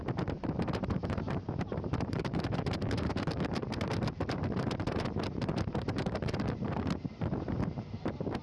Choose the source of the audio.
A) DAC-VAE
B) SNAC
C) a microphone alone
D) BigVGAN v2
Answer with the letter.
D